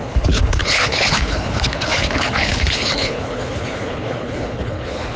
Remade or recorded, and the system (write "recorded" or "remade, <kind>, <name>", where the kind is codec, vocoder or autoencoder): remade, codec, HILCodec